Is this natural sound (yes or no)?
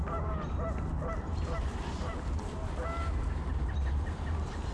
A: yes